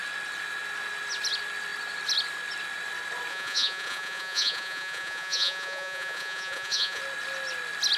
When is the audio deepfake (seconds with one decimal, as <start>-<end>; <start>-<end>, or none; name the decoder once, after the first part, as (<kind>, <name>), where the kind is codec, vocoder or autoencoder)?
3.3-7.0 (vocoder, Vocos)